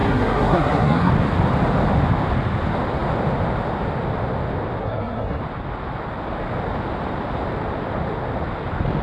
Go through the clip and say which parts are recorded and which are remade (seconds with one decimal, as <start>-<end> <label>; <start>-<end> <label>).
0.0-1.1 remade; 1.1-4.8 recorded; 4.8-5.4 remade; 5.4-9.0 recorded